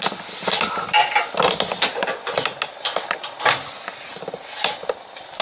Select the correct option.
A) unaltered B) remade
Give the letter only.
A